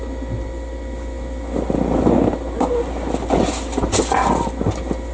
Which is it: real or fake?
real